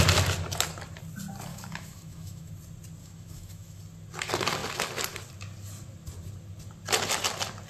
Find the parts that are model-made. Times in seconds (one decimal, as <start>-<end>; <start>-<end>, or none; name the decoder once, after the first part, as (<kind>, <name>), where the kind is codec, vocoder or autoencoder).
1.5-2.5 (autoencoder, DAC-VAE); 3.0-3.8